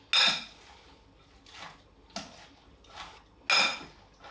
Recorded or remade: recorded